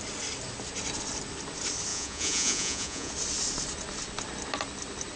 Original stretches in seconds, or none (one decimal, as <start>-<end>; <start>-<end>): 0.0-1.9; 3.1-5.2